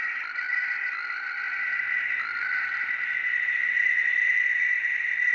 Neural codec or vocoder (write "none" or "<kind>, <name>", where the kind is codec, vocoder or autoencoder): none